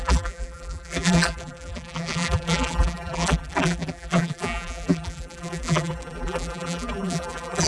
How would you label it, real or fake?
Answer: fake